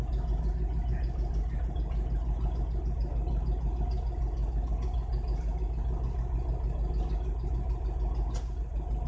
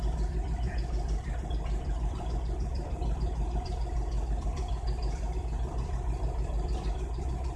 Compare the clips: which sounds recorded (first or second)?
first